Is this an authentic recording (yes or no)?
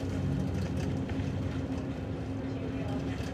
yes